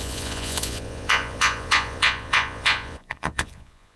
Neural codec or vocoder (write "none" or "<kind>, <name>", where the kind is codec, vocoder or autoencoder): vocoder, Vocos